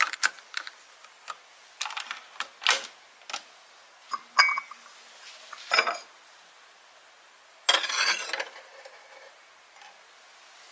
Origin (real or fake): real